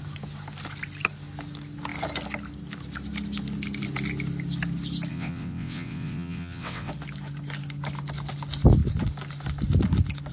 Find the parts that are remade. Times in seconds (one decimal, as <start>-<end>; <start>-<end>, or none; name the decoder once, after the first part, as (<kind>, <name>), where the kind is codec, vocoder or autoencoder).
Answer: 5.1-6.9 (vocoder, WaveNeXt)

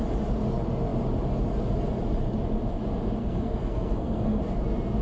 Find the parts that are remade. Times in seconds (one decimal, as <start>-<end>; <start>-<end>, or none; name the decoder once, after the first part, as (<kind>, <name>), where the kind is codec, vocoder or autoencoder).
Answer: 3.2-4.4 (codec, SNAC)

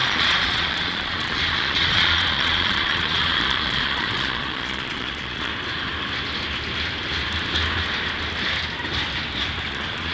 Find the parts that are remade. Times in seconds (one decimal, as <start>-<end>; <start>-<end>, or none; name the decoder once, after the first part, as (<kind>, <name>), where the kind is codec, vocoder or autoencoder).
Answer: 0.0-5.5 (vocoder, Vocos); 9.7-10.1

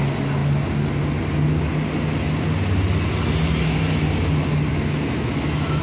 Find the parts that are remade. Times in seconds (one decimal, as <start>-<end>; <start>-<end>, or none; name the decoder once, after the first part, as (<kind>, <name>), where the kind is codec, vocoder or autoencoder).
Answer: 4.7-5.8 (autoencoder, DAC-VAE)

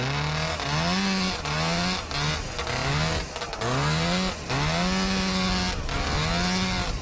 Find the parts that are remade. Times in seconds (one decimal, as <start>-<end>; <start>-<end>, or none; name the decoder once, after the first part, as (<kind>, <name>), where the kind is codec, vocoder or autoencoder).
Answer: none